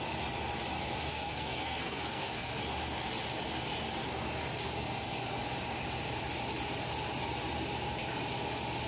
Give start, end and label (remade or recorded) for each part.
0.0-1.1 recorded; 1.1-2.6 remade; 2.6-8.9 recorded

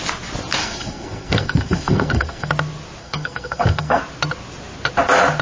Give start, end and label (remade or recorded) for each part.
0.0-0.6 recorded; 0.6-2.5 remade; 2.5-3.0 recorded; 3.0-4.0 remade; 4.0-5.4 recorded

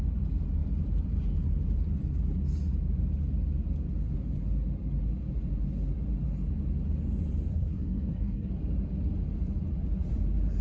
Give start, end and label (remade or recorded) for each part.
0.0-7.5 recorded; 7.5-8.5 remade; 8.5-10.6 recorded

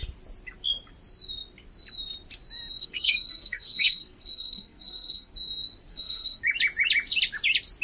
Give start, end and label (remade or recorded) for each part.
0.0-2.8 recorded; 2.8-5.3 remade; 5.3-5.9 recorded; 5.9-6.4 remade; 6.4-7.8 recorded

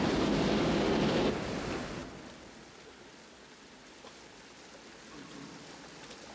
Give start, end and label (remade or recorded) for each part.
0.0-6.3 recorded